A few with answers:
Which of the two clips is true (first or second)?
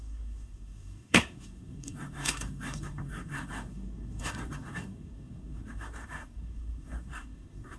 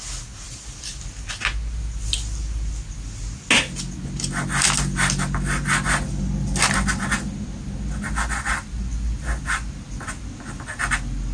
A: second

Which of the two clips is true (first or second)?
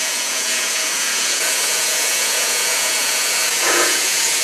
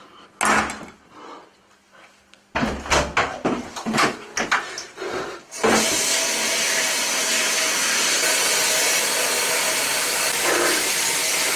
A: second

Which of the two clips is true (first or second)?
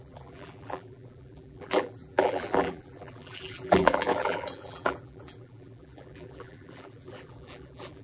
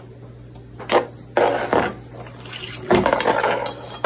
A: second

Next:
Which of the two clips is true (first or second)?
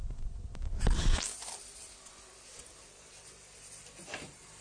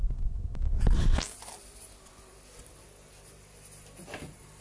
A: second